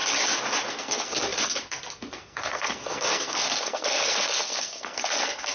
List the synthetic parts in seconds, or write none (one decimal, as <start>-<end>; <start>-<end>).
0.7-5.5